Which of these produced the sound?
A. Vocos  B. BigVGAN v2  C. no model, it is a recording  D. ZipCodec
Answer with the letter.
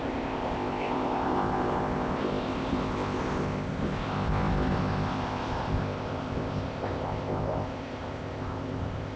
D